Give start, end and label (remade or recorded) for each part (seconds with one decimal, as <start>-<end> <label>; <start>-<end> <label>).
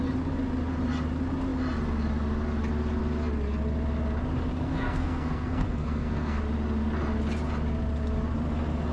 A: 0.0-4.5 recorded; 4.5-6.4 remade; 6.4-8.9 recorded